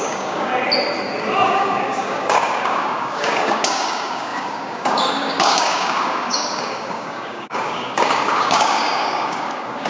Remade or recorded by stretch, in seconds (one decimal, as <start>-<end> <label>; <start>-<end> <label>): 0.0-0.5 remade; 0.5-1.5 recorded; 1.5-9.9 remade